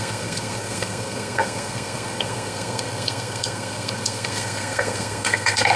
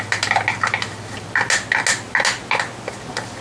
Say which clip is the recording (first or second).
second